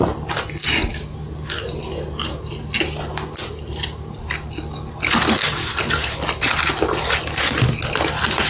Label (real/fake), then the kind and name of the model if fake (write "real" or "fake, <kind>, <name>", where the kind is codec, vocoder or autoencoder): real